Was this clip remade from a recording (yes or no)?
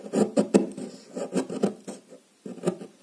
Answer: no